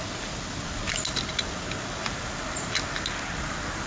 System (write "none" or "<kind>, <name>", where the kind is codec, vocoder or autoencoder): none